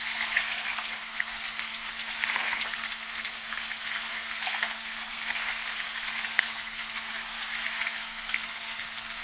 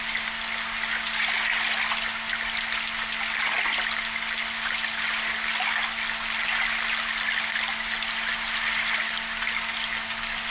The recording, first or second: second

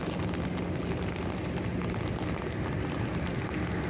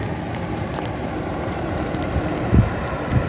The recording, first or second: first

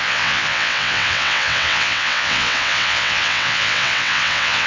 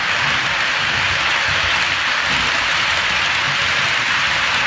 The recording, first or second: second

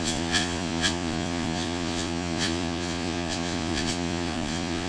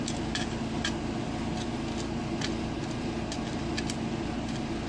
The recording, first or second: second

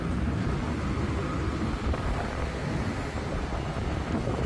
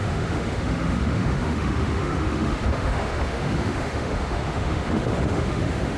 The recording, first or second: first